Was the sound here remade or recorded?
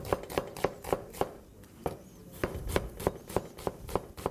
recorded